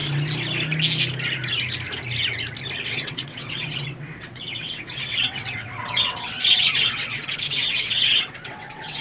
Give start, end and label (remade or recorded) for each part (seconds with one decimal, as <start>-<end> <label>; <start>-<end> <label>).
0.0-2.9 recorded; 2.9-9.0 remade